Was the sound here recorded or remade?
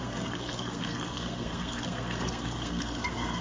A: remade